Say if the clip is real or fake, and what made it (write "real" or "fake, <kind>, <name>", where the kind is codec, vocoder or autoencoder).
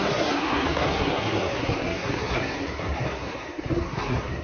fake, codec, SNAC